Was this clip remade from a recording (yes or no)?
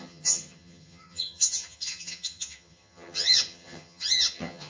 yes